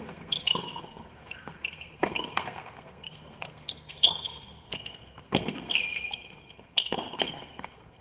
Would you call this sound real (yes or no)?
no